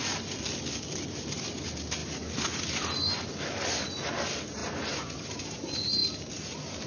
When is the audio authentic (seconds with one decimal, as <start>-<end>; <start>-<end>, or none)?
0.0-6.9